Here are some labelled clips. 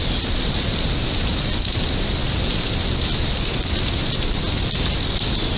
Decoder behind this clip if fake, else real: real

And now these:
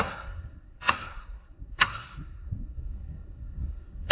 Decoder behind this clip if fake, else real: fake, codec, SNAC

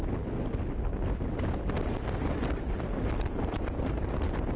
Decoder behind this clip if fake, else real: real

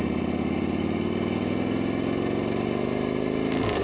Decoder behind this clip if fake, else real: real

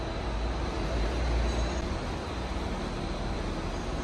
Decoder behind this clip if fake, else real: real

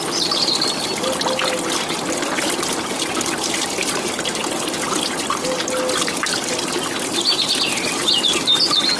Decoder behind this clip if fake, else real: real